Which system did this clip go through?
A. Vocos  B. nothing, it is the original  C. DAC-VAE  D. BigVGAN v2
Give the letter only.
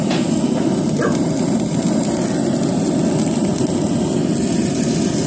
B